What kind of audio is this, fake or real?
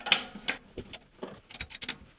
real